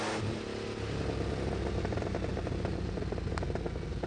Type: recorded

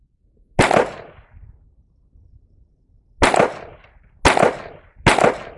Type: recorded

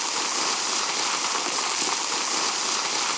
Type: recorded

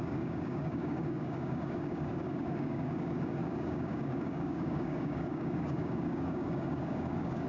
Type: remade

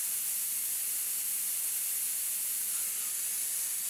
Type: recorded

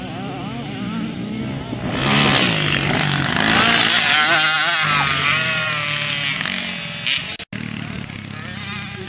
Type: recorded